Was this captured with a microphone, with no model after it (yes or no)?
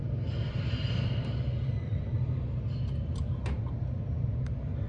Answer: yes